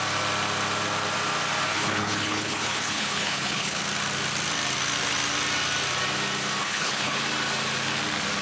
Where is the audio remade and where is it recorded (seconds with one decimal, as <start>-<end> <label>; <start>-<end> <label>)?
0.0-1.7 recorded; 1.7-3.8 remade; 3.8-6.6 recorded; 6.6-7.2 remade; 7.2-8.4 recorded